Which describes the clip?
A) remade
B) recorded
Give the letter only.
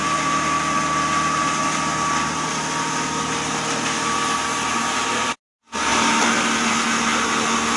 B